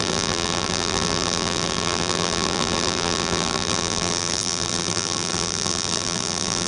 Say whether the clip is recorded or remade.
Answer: remade